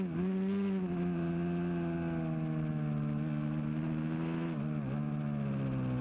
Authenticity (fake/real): real